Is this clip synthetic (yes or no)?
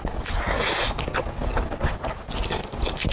no